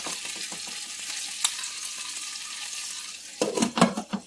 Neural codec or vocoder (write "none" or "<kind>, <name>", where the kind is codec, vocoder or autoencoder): none